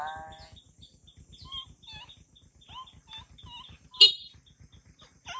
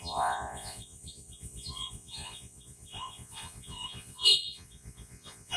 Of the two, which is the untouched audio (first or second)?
first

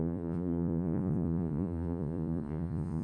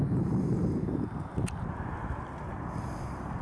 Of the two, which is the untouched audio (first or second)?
second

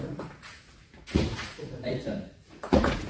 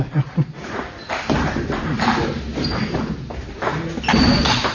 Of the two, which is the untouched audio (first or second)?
second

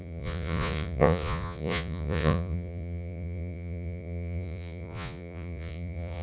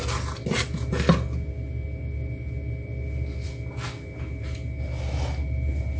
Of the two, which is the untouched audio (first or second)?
second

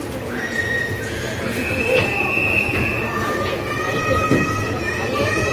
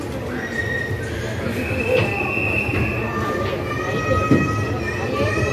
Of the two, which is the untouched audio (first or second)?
second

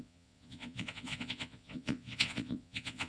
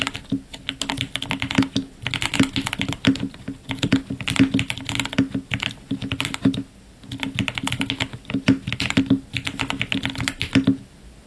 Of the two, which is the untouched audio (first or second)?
second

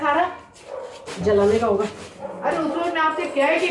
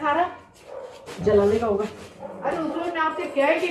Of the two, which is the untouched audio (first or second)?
first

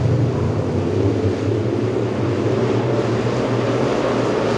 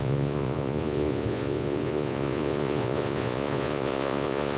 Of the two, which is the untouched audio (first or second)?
first